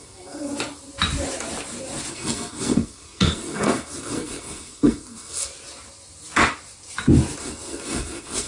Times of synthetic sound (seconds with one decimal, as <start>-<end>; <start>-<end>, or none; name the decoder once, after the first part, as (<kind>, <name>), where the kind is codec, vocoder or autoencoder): 0.0-0.5 (codec, SNAC); 2.1-5.5; 7.4-8.5